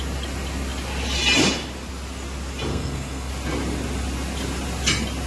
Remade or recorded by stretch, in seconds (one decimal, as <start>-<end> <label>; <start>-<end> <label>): 0.0-2.7 recorded; 2.7-3.3 remade; 3.3-5.3 recorded